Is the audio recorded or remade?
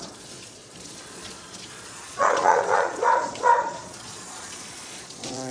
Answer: remade